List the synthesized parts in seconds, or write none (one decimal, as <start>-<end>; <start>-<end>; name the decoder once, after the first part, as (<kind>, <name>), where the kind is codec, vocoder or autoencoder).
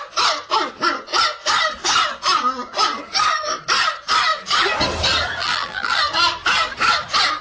5.4-6.0 (vocoder, BigVGAN v2)